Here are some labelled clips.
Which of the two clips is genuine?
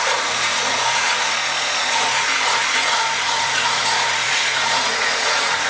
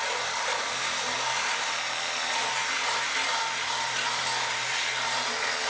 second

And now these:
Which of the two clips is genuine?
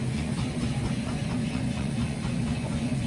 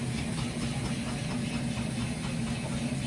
second